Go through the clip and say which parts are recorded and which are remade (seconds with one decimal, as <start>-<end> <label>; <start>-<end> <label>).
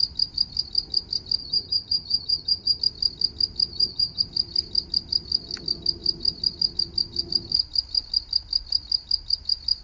0.0-1.4 recorded; 1.4-2.8 remade; 2.8-3.7 recorded; 3.7-4.2 remade; 4.2-9.8 recorded